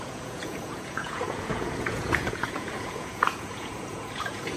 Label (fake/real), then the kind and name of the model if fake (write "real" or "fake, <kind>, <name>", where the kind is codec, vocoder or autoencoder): fake, vocoder, Vocos